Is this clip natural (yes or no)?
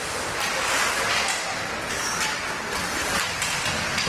yes